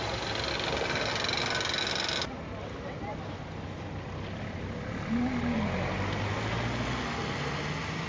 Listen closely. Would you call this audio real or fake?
real